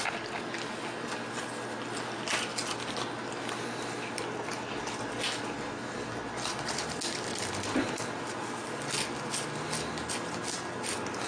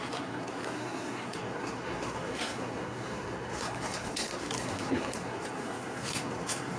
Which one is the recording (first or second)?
first